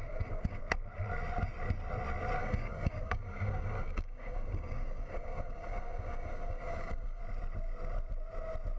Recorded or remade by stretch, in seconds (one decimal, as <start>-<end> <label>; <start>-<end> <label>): 0.0-0.6 remade; 0.6-2.4 recorded; 2.4-7.2 remade; 7.2-8.8 recorded